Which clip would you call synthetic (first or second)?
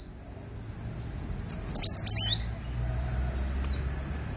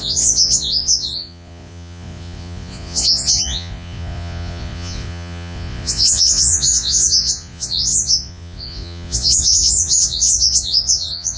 second